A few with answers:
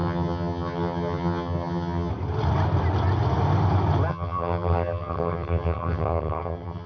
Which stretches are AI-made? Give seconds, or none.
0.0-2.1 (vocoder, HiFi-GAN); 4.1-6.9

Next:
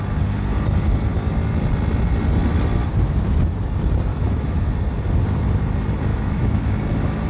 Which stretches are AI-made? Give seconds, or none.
4.1-4.7 (autoencoder, DAC-VAE); 6.1-6.7

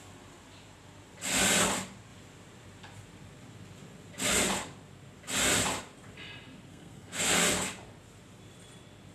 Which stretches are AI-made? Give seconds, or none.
6.7-7.4 (codec, SNAC)

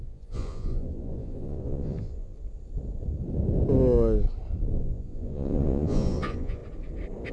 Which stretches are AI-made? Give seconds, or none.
0.0-2.3 (vocoder, Vocos); 4.8-6.6